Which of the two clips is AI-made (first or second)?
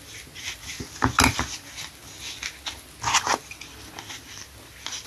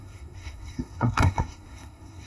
second